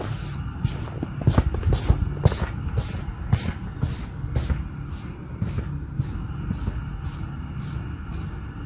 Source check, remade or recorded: recorded